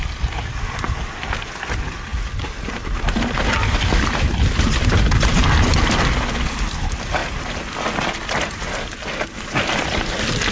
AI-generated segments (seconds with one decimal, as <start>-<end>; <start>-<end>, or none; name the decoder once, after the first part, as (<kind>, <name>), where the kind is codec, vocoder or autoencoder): none

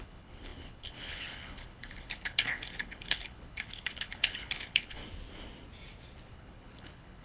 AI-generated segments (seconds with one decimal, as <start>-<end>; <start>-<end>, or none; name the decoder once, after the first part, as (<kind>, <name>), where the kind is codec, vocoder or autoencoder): 0.0-5.0 (codec, HILCodec); 6.3-7.2